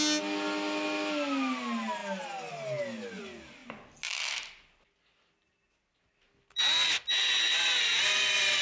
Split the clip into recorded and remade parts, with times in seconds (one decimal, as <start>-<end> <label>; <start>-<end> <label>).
0.0-8.6 recorded